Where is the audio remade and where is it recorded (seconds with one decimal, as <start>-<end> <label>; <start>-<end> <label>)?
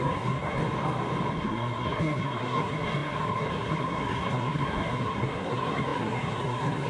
0.0-0.6 remade; 0.6-1.3 recorded; 1.3-6.9 remade